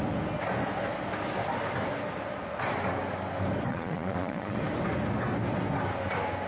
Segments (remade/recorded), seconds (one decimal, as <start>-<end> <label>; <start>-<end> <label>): 0.0-3.7 recorded; 3.7-4.6 remade; 4.6-6.5 recorded